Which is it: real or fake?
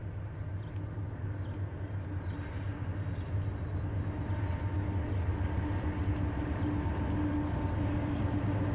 real